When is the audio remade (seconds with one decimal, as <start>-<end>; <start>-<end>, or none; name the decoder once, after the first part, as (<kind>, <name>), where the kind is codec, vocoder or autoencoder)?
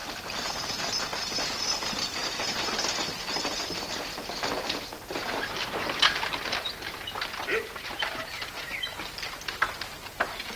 0.0-0.8 (vocoder, BigVGAN v2); 2.2-2.8; 7.5-8.4